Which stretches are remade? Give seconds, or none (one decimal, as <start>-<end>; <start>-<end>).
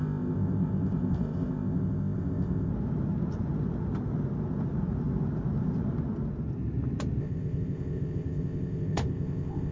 0.0-2.7; 7.2-9.7